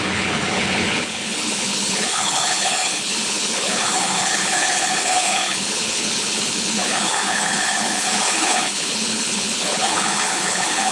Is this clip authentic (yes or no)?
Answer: no